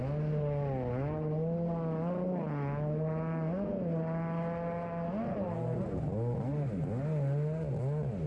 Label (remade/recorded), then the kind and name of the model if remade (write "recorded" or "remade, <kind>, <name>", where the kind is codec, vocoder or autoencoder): recorded